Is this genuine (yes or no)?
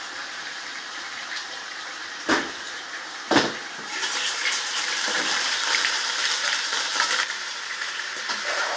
no